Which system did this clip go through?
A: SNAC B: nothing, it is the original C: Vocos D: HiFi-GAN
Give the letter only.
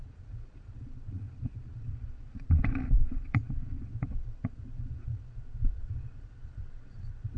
C